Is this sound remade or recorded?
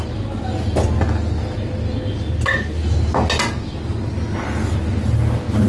recorded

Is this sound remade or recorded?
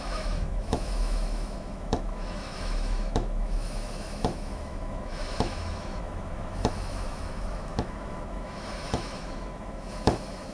remade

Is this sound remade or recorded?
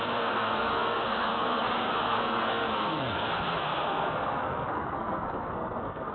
remade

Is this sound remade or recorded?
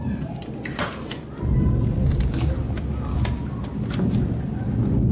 recorded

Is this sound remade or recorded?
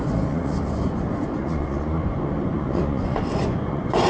remade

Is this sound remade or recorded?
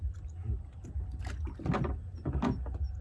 recorded